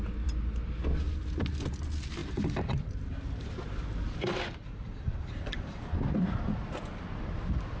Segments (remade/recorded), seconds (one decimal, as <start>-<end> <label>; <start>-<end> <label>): 0.0-2.2 recorded; 2.2-5.5 remade; 5.5-7.8 recorded